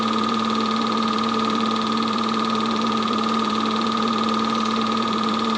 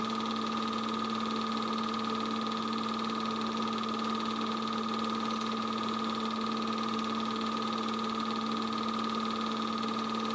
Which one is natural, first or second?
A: second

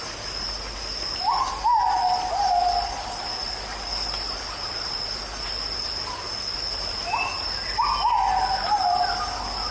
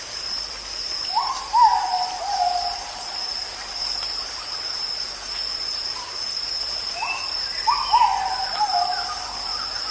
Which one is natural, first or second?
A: first